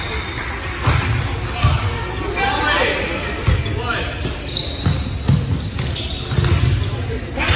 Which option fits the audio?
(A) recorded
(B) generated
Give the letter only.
A